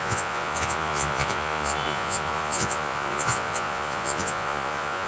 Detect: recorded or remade remade